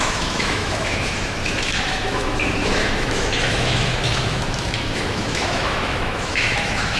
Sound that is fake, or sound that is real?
fake